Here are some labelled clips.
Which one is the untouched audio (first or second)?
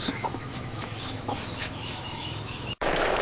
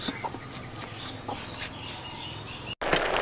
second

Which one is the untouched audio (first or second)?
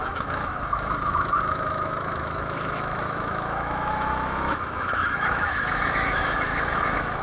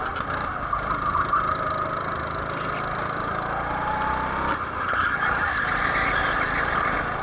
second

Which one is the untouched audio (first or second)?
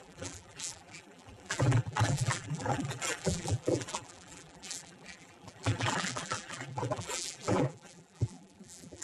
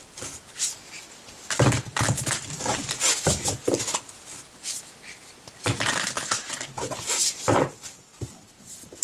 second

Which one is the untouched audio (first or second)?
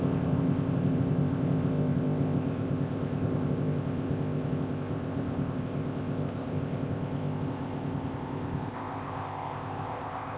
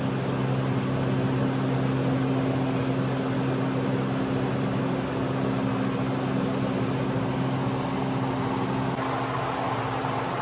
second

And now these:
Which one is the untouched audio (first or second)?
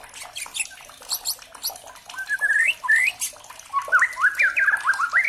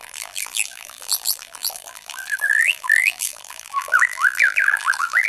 first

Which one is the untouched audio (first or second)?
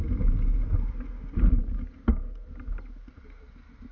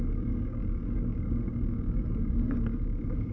first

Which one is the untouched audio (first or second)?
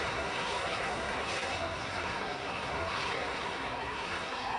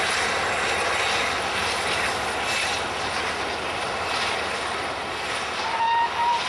second